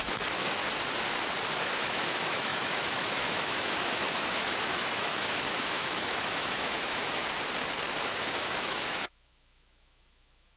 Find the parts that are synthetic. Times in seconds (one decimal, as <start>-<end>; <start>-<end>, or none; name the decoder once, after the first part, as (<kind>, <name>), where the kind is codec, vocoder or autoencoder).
0.0-0.6 (autoencoder, DAC-VAE); 1.6-7.2; 8.0-10.6